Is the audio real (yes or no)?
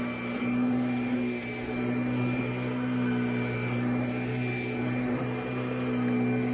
yes